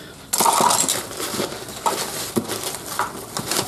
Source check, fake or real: real